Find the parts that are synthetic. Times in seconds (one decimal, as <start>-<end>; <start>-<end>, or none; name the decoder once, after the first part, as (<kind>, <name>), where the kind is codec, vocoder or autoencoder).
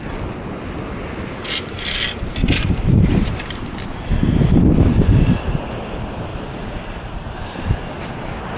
2.4-3.4 (vocoder, BigVGAN v2); 6.3-7.2